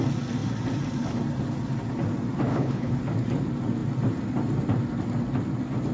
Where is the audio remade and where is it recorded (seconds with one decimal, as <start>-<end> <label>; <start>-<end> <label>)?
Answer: 0.0-2.5 recorded; 2.5-3.0 remade; 3.0-5.9 recorded